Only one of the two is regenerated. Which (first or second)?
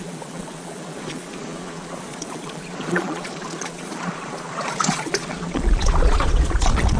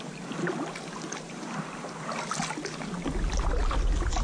first